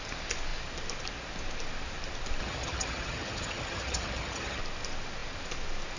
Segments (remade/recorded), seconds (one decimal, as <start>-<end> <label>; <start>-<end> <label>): 0.0-2.4 recorded; 2.4-4.6 remade; 4.6-6.0 recorded